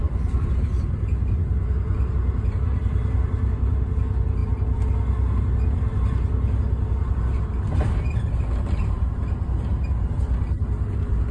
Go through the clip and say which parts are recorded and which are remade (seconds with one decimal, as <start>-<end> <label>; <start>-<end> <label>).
0.0-11.3 recorded